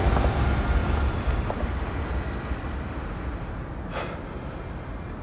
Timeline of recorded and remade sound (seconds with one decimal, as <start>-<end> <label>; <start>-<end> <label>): 0.0-0.8 recorded; 0.8-2.1 remade; 2.1-5.2 recorded